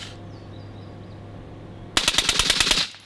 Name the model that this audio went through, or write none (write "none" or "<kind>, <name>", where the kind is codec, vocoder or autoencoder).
none